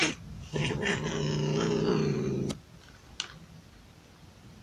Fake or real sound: real